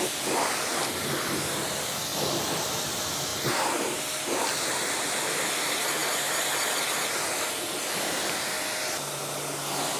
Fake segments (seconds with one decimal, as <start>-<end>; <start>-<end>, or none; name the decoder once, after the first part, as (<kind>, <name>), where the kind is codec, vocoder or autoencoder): none